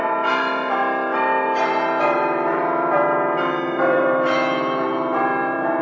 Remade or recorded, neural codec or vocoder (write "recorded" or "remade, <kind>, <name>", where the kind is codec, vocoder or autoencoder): remade, vocoder, BigVGAN v2